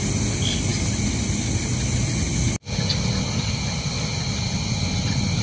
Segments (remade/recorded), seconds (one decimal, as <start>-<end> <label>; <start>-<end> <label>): 0.0-5.4 recorded

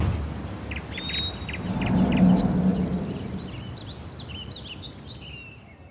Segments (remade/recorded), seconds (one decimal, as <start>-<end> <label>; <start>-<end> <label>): 0.0-5.9 recorded

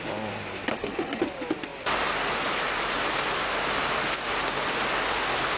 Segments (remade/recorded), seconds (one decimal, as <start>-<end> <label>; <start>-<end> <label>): 0.0-0.7 recorded; 0.7-1.2 remade; 1.2-5.6 recorded

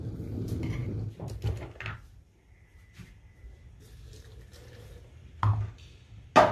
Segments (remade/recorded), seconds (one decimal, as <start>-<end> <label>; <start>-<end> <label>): 0.0-6.5 recorded

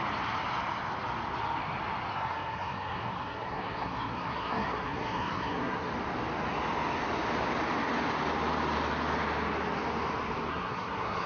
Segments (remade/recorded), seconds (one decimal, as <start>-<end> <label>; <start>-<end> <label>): 0.0-2.1 recorded; 2.1-5.9 remade; 5.9-10.5 recorded; 10.5-11.3 remade

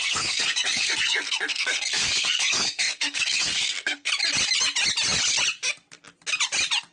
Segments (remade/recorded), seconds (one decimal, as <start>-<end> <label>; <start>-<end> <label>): 0.0-4.1 remade; 4.1-6.9 recorded

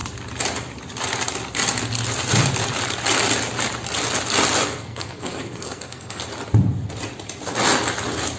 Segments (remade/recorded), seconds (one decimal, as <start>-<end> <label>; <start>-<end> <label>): 0.0-4.6 recorded; 4.6-6.2 remade; 6.2-8.4 recorded

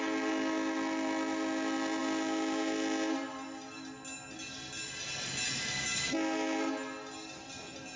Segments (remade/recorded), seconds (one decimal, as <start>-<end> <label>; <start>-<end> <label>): 0.0-8.0 recorded